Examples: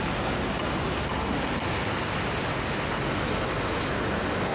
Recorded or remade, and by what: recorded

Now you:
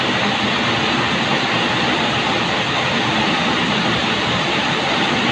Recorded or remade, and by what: recorded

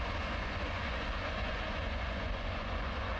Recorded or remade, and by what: remade, vocoder, Vocos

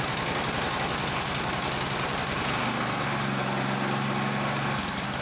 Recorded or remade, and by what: recorded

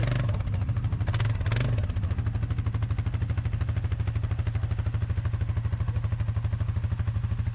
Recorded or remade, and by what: recorded